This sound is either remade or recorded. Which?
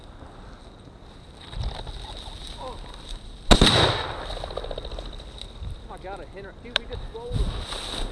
recorded